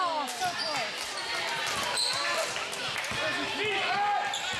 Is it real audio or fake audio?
real